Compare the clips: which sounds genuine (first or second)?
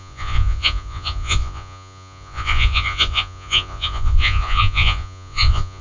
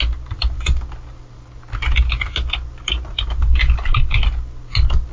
second